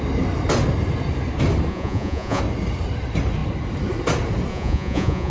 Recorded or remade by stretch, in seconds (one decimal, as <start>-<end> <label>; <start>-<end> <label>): 0.0-1.7 recorded; 1.7-2.4 remade; 2.4-4.5 recorded; 4.5-5.3 remade